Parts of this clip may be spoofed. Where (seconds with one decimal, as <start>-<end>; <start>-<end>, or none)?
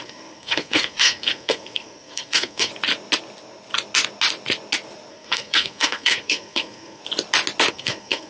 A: 0.0-2.7; 5.1-7.0; 7.7-8.3